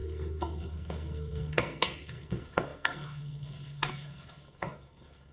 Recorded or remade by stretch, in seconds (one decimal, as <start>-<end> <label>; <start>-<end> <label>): 0.0-5.3 remade